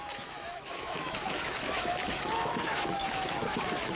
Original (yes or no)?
no